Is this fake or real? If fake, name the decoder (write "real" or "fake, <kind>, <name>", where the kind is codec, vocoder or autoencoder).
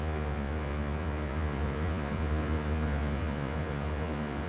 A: fake, vocoder, Vocos